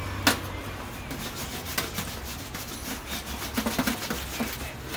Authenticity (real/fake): real